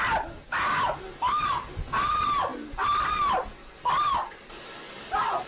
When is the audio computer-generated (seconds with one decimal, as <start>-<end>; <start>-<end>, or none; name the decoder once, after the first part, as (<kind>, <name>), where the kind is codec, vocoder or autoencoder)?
none